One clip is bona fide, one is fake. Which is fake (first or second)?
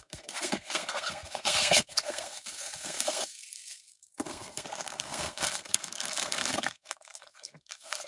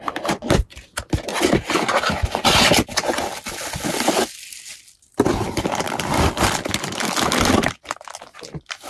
first